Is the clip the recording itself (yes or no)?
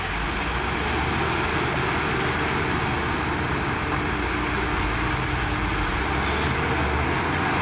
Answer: yes